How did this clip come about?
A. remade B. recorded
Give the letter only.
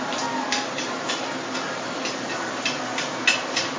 B